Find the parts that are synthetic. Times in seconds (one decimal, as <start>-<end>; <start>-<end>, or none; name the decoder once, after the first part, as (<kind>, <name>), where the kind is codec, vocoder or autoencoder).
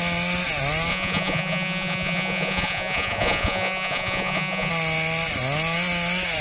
0.9-4.7 (vocoder, Vocos)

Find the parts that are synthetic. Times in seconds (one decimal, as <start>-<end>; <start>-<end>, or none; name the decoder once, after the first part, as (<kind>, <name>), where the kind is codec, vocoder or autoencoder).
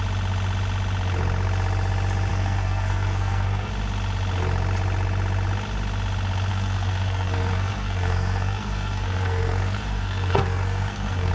2.3-3.7 (codec, SNAC); 6.5-11.3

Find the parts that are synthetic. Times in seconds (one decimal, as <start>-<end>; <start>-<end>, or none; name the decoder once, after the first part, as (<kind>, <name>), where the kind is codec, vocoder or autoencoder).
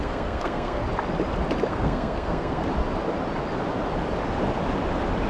0.0-0.8 (codec, SNAC); 1.7-2.6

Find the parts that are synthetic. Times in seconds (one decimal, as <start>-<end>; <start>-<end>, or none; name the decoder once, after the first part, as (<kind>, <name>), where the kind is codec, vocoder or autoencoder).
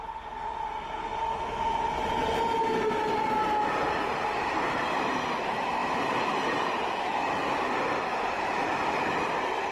0.0-1.1 (vocoder, BigVGAN v2); 3.9-5.8; 8.0-9.7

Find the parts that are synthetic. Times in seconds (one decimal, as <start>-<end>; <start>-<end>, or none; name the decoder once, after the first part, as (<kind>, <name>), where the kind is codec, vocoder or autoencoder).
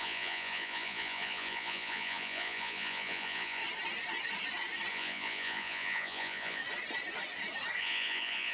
0.0-3.6 (vocoder, Vocos); 4.9-6.6; 7.8-8.5